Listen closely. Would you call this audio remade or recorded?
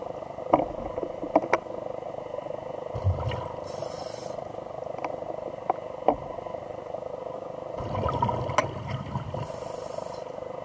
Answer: recorded